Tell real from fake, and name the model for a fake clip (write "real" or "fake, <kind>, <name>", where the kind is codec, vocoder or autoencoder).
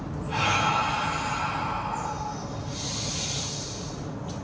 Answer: real